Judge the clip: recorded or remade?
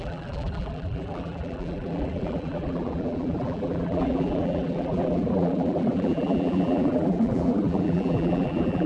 remade